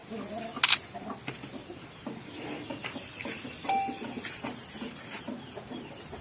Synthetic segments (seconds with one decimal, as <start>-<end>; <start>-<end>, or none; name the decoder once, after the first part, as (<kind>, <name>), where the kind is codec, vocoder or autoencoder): 1.6-2.2 (vocoder, BigVGAN v2)